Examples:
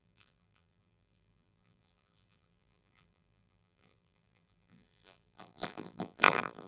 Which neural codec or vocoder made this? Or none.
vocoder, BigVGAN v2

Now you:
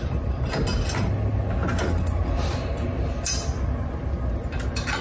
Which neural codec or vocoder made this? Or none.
none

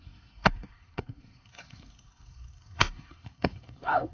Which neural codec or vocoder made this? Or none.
codec, SNAC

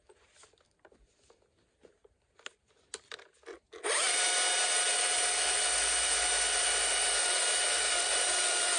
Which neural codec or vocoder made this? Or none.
none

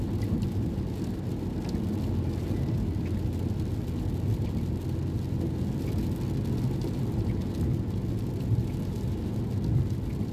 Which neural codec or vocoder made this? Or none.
none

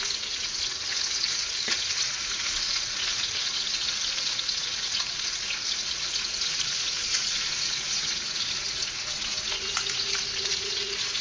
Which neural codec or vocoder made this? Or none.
vocoder, Vocos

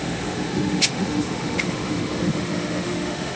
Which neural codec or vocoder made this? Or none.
autoencoder, DAC-VAE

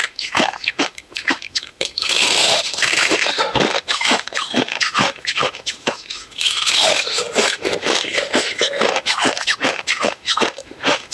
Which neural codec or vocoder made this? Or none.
autoencoder, DAC-VAE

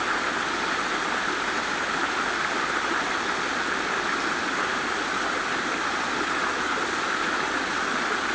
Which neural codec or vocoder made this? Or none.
none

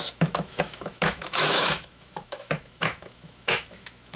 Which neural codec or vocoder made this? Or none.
autoencoder, DAC-VAE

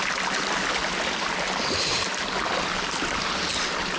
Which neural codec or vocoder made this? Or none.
none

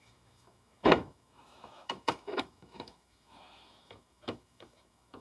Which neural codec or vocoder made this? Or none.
autoencoder, DAC-VAE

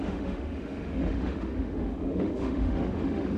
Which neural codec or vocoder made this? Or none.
autoencoder, DAC-VAE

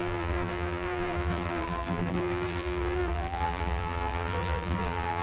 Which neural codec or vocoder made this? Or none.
vocoder, BigVGAN v2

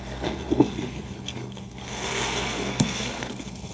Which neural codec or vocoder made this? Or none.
codec, SNAC